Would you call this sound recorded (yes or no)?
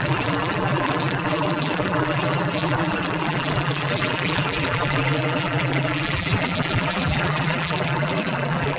no